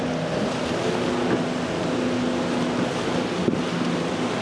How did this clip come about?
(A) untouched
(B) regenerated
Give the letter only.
A